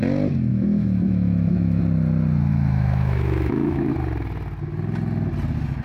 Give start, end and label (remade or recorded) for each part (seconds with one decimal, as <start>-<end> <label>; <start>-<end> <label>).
0.0-0.5 recorded; 0.5-1.8 remade; 1.8-2.5 recorded; 2.5-3.9 remade; 3.9-5.8 recorded